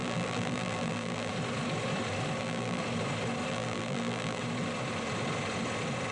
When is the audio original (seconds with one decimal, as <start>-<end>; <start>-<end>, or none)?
1.3-2.4; 2.8-3.5; 4.4-6.1